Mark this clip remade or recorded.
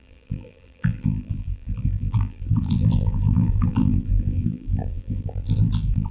remade